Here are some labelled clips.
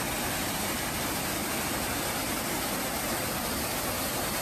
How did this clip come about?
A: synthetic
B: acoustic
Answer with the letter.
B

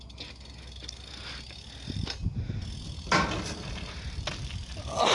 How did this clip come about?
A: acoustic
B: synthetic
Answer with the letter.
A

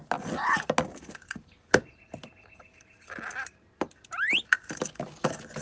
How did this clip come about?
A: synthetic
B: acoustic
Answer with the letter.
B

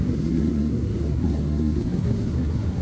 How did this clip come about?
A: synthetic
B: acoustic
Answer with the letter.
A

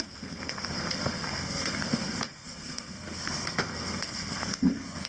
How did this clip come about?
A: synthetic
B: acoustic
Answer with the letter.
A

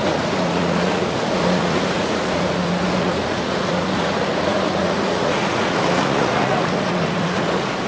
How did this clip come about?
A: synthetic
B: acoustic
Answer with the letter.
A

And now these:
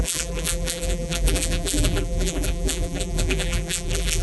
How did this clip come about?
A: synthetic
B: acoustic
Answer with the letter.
A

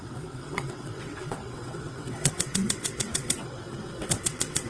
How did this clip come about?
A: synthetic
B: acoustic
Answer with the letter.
A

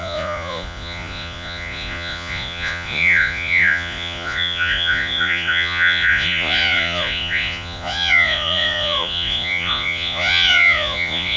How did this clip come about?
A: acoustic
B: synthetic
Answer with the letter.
B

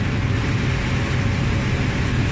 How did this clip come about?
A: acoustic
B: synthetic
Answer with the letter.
A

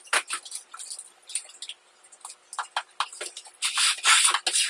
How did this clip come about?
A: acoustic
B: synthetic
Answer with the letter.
A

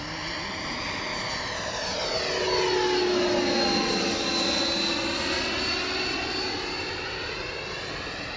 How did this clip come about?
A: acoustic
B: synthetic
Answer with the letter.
A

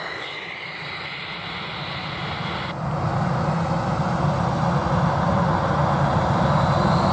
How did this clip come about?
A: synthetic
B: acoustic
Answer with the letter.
B